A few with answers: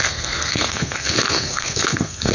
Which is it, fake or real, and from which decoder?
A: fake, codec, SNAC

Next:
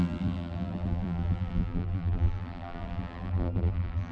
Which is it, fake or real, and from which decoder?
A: fake, vocoder, BigVGAN v2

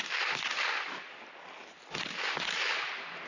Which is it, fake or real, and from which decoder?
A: real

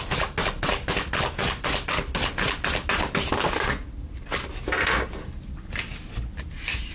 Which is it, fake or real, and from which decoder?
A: real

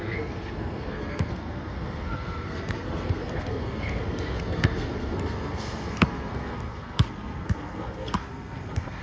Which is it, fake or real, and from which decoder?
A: fake, codec, SNAC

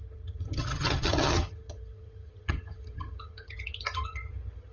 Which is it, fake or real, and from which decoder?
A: fake, vocoder, HiFi-GAN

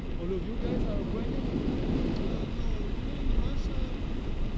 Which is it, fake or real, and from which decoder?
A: real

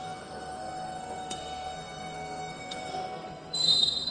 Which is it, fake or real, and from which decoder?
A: fake, codec, SNAC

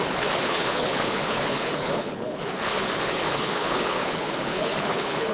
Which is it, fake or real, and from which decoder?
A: fake, codec, HILCodec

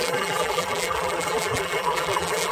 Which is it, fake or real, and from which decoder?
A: fake, vocoder, BigVGAN v2